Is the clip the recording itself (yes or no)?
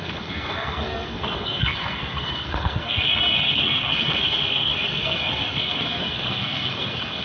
no